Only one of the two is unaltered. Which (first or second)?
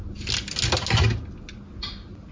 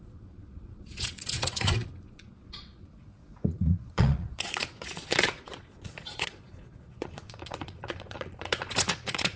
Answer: first